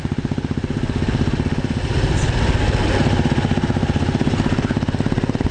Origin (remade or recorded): recorded